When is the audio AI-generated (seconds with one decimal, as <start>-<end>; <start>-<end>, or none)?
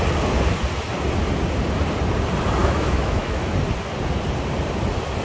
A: 2.6-3.5